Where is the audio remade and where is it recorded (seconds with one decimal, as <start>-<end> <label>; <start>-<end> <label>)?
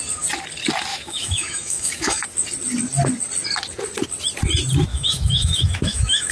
0.0-0.9 recorded; 0.9-2.2 remade; 2.2-4.9 recorded; 4.9-6.3 remade